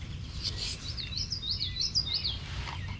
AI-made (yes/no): no